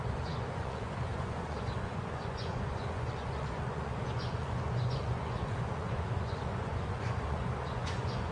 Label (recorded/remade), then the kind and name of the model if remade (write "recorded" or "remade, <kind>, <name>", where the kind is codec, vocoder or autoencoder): remade, vocoder, Vocos